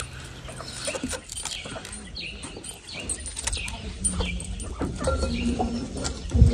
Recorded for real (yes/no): yes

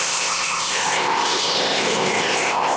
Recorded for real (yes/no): no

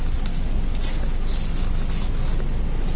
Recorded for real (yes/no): yes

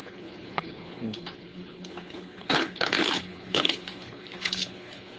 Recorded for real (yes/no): no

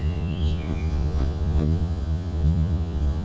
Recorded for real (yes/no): no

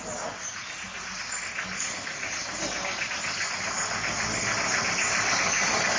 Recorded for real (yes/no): yes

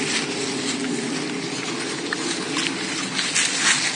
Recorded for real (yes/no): yes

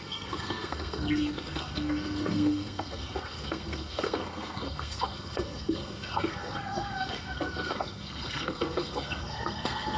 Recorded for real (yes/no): no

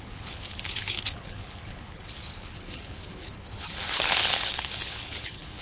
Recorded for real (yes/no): no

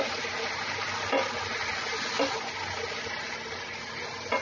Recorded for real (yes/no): yes